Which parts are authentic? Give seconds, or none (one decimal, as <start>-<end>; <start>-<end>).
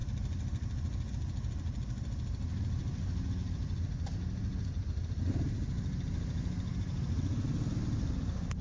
0.0-8.6